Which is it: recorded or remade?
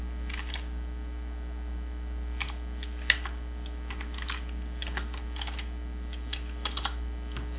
recorded